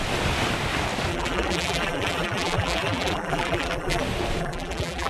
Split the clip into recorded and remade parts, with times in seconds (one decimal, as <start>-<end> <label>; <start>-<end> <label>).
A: 0.0-1.1 recorded; 1.1-4.0 remade; 4.0-4.4 recorded; 4.4-5.1 remade